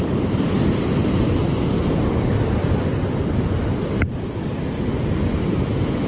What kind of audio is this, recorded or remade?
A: recorded